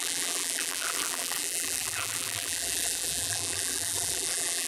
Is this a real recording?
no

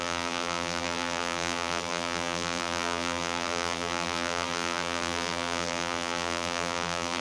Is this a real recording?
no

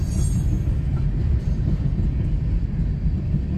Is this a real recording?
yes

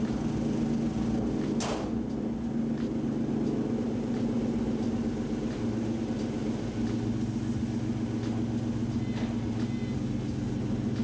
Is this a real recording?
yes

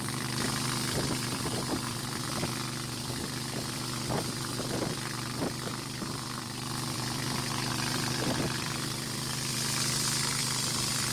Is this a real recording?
no